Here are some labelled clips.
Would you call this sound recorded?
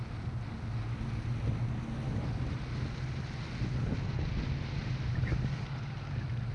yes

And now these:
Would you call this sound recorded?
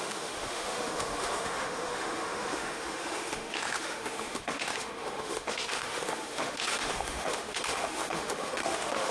no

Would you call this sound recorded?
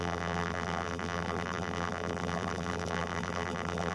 no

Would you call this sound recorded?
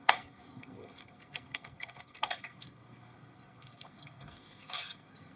no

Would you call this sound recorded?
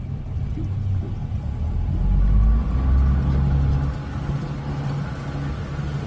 yes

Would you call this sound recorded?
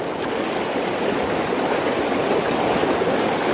yes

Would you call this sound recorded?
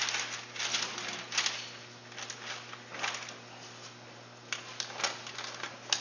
yes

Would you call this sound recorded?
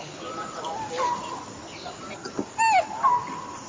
yes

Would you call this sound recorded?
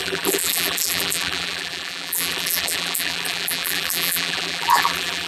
no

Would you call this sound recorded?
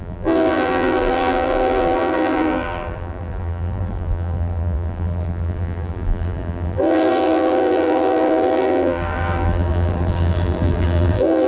no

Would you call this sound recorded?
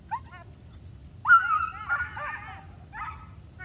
yes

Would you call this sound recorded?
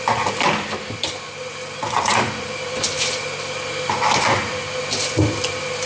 yes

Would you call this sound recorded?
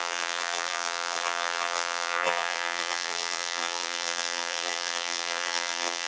no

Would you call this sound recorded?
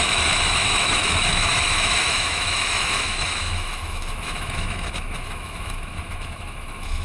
no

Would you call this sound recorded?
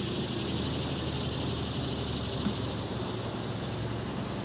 yes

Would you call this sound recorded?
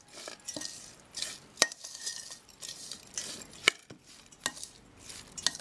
yes